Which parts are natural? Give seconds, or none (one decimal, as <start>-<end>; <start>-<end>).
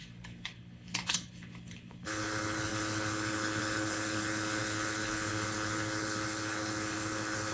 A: none